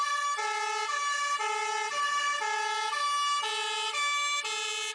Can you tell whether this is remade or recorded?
recorded